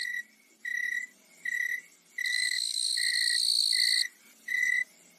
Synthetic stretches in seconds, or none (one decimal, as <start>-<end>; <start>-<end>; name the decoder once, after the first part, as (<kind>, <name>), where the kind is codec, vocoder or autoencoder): 2.3-2.9 (codec, DAC)